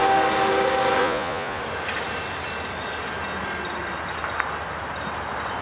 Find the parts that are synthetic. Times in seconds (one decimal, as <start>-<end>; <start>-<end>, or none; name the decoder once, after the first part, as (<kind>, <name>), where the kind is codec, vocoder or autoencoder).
1.0-1.6 (vocoder, Vocos)